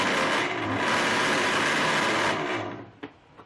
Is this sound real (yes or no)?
yes